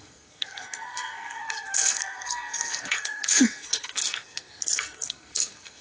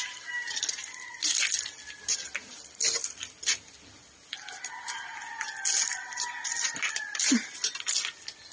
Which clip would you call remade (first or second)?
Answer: first